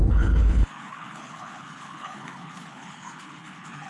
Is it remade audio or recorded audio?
remade